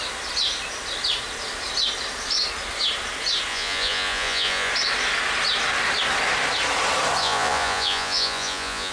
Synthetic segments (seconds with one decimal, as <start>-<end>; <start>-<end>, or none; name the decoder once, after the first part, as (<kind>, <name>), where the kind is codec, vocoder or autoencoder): 3.5-4.7 (vocoder, Vocos); 7.2-8.9